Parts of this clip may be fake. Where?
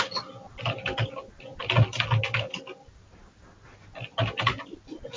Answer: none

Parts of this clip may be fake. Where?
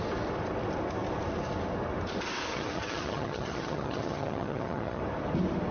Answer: 2.5-5.0 (vocoder, HiFi-GAN)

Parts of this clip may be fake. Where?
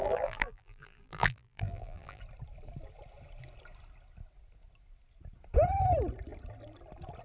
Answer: 0.0-2.2 (vocoder, BigVGAN v2)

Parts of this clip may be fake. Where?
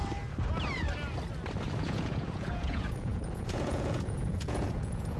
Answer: 1.8-5.2 (vocoder, Vocos)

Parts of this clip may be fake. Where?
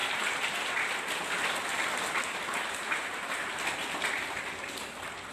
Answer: 2.6-3.4 (vocoder, BigVGAN v2)